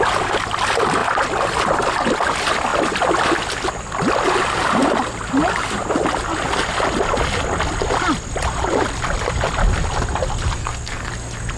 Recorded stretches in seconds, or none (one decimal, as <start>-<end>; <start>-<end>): 0.0-10.6; 11.1-11.6